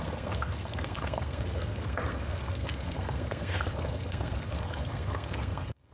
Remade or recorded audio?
remade